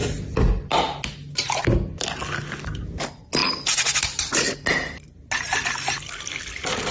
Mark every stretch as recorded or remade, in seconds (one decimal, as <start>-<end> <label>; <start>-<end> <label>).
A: 0.0-6.9 recorded

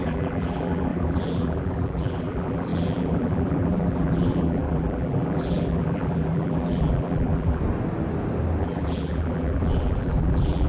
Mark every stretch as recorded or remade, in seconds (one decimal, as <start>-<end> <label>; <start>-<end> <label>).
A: 0.0-7.6 remade; 7.6-8.6 recorded; 8.6-10.7 remade